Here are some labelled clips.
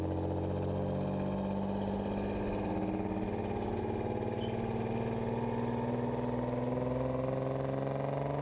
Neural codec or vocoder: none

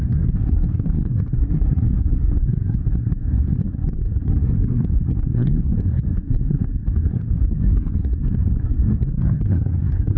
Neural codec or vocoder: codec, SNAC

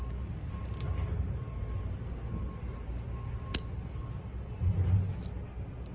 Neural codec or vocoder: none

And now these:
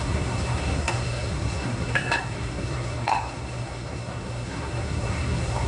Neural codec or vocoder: codec, SNAC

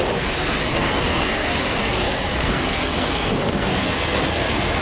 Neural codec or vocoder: codec, SNAC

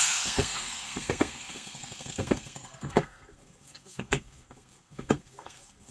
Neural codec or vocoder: codec, SNAC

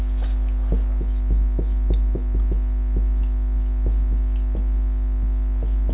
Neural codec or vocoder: none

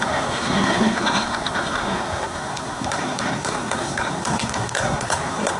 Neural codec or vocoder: codec, SNAC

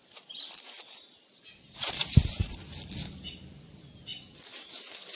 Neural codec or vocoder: none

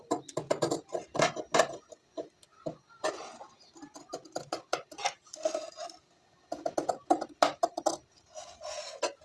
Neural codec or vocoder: none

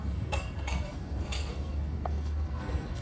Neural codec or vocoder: codec, SNAC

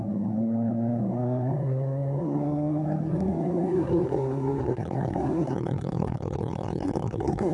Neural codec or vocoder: codec, SNAC